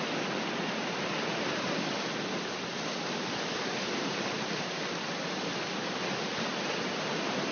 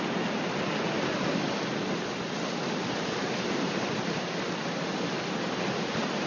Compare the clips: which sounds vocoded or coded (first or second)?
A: first